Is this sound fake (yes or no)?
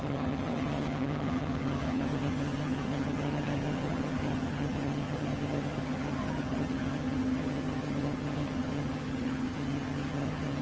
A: yes